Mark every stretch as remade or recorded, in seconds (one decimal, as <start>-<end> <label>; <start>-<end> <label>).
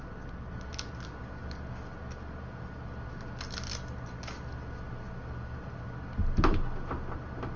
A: 0.0-7.6 recorded